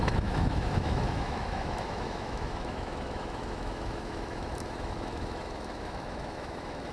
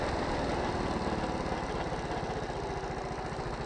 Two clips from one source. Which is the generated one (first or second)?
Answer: first